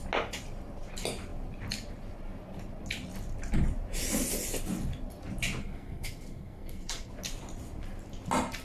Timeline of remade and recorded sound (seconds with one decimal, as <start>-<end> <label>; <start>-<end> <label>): 0.0-5.6 recorded; 5.6-7.1 remade; 7.1-8.6 recorded